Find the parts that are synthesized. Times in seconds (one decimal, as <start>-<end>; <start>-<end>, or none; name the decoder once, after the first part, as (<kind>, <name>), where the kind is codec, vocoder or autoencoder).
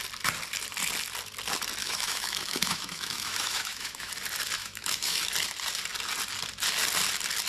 1.8-4.1 (autoencoder, DAC-VAE); 4.6-5.2